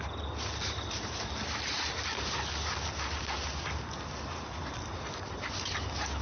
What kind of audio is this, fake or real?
real